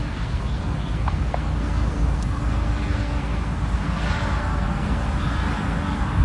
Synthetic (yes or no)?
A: yes